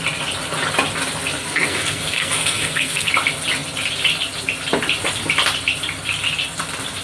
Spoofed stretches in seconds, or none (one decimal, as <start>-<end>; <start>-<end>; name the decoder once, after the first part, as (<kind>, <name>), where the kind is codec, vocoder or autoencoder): 1.4-3.1 (codec, SNAC)